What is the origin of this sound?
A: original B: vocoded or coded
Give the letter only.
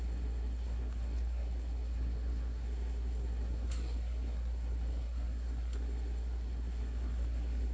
B